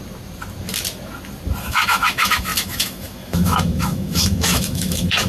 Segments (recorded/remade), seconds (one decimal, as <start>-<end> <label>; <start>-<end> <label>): 0.0-1.6 recorded; 1.6-5.3 remade